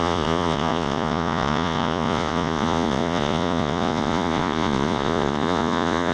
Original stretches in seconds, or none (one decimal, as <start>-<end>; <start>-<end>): none